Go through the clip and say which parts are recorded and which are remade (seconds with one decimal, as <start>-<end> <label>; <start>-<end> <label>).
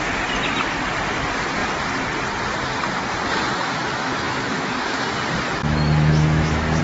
0.0-3.5 recorded; 3.5-5.0 remade; 5.0-5.6 recorded; 5.6-6.8 remade